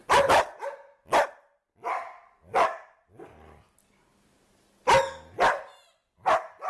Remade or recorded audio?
recorded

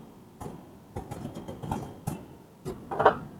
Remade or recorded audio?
recorded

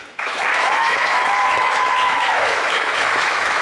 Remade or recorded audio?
remade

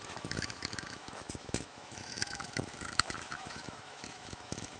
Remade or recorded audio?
remade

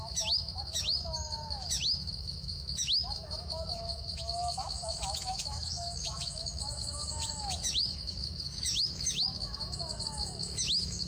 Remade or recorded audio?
remade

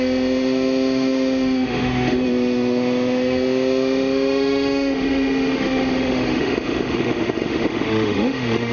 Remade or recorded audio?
remade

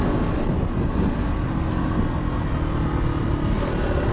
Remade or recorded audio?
recorded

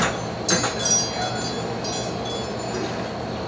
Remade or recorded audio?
recorded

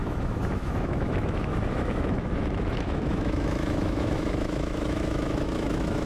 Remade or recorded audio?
remade